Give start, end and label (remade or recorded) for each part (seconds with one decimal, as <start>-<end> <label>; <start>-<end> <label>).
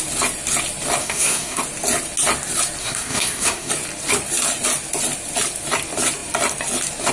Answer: 0.0-1.0 recorded; 1.0-1.6 remade; 1.6-2.8 recorded; 2.8-3.7 remade; 3.7-7.1 recorded